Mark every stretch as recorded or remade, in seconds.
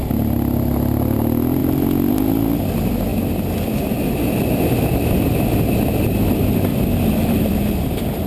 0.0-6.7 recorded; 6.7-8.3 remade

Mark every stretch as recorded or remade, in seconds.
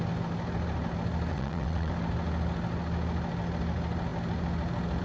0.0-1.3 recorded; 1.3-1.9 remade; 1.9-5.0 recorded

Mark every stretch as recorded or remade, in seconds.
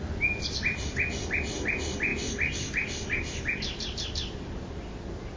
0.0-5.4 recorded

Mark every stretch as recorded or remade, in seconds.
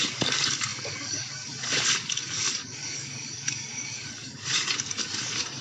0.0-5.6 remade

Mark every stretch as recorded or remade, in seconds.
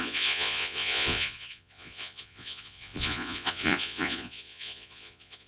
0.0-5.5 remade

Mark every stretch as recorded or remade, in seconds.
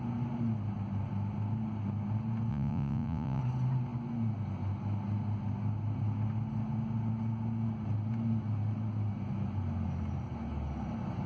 0.0-2.5 recorded; 2.5-3.4 remade; 3.4-11.3 recorded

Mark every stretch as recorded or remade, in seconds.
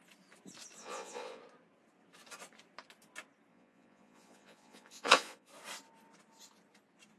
0.0-0.8 recorded; 0.8-1.4 remade; 1.4-3.5 recorded; 3.5-5.5 remade; 5.5-7.2 recorded